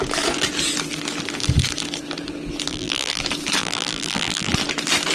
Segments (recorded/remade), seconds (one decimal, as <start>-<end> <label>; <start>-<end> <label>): 0.0-2.7 recorded; 2.7-3.2 remade; 3.2-3.6 recorded; 3.6-4.5 remade; 4.5-5.1 recorded